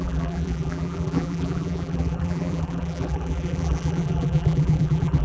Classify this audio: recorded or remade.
remade